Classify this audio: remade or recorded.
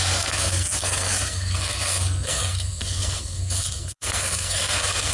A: remade